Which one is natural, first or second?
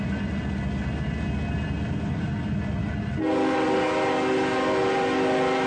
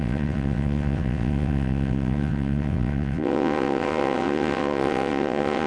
first